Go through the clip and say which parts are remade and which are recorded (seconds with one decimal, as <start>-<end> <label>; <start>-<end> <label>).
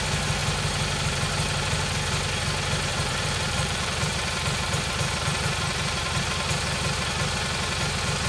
0.0-0.4 recorded; 0.4-1.8 remade; 1.8-2.9 recorded; 2.9-6.2 remade; 6.2-8.3 recorded